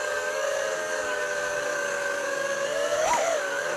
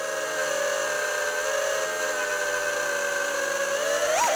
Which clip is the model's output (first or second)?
first